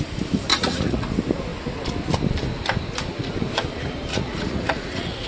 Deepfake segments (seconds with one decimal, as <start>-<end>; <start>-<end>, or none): 0.5-1.1; 4.1-5.3